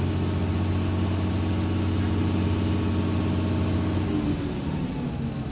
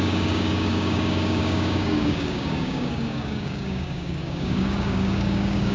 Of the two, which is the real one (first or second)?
first